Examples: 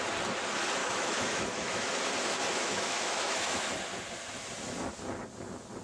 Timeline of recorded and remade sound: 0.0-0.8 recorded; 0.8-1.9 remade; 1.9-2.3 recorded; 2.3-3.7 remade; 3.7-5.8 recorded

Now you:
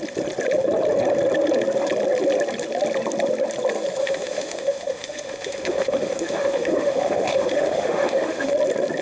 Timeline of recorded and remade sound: 0.0-4.0 recorded; 4.0-8.5 remade; 8.5-9.0 recorded

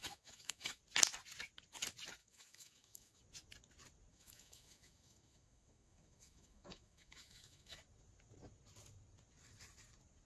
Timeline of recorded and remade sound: 0.0-0.8 remade; 0.8-2.2 recorded; 2.2-3.2 remade; 3.2-4.1 recorded; 4.1-7.8 remade; 7.8-10.3 recorded

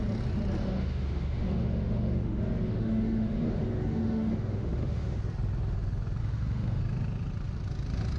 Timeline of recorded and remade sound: 0.0-0.6 recorded; 0.6-5.2 remade; 5.2-6.2 recorded; 6.2-6.8 remade; 6.8-8.2 recorded

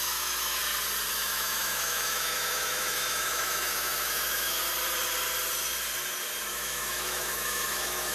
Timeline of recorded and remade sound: 0.0-0.6 remade; 0.6-1.1 recorded; 1.1-4.6 remade; 4.6-6.5 recorded; 6.5-8.1 remade

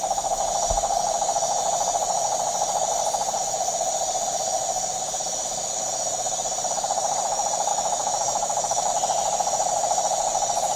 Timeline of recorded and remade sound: 0.0-7.7 recorded; 7.7-8.9 remade; 8.9-10.8 recorded

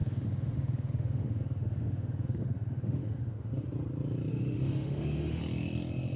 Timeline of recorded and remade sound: 0.0-3.7 remade; 3.7-4.3 recorded; 4.3-5.4 remade; 5.4-6.2 recorded

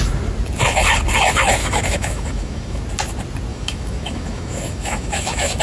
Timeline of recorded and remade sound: 0.0-1.6 recorded; 1.6-2.8 remade; 2.8-3.5 recorded; 3.5-5.6 remade